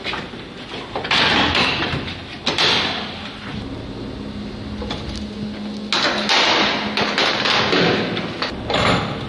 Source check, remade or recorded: recorded